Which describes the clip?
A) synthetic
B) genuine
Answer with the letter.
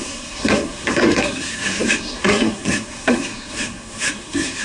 A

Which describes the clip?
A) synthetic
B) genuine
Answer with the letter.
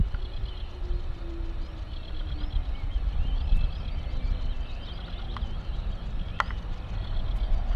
B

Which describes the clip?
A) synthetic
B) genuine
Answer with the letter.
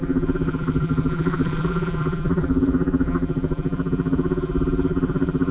A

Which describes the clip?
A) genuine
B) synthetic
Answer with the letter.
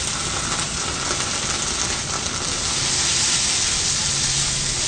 A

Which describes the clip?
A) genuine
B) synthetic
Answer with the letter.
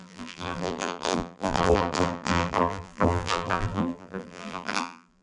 B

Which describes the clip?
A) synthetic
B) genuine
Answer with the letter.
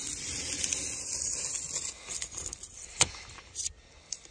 B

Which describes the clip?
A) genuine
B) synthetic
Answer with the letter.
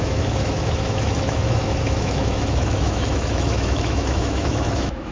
B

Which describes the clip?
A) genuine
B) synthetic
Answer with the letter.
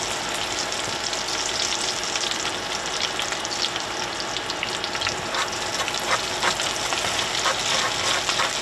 A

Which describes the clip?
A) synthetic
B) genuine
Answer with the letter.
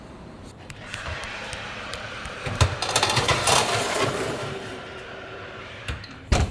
A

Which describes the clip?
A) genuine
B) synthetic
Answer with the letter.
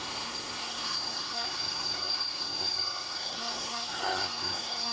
B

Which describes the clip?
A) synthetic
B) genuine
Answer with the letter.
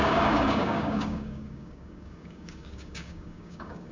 A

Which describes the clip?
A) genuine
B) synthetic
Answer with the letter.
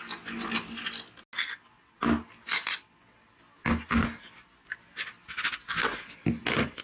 A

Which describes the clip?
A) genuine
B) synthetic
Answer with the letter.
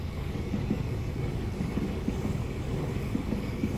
B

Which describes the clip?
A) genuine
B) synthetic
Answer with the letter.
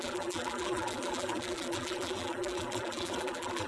B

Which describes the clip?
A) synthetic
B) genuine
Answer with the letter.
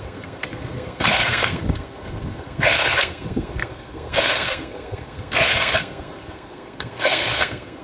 A